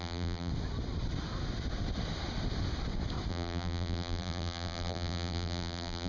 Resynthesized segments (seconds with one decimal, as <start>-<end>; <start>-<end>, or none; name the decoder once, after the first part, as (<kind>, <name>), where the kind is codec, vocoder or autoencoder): 0.0-0.5 (vocoder, BigVGAN v2); 3.3-6.1